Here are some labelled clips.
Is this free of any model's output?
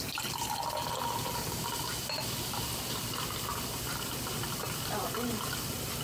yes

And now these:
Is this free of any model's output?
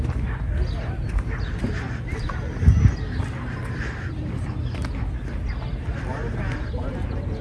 yes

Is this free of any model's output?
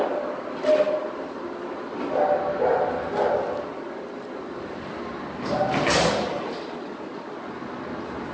yes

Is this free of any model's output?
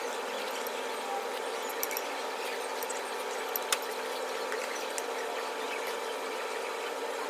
yes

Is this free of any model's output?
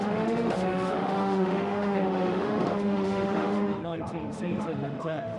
no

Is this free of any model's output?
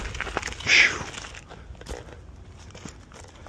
yes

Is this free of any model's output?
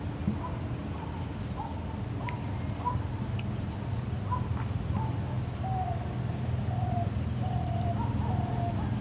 yes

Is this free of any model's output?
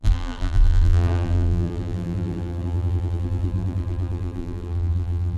no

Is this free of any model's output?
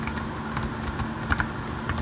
yes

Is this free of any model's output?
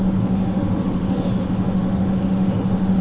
no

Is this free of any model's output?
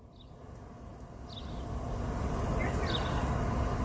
yes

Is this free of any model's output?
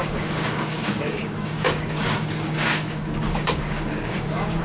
no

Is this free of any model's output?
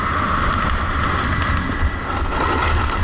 yes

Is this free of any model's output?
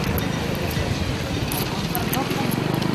yes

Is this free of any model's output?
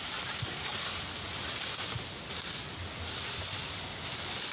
yes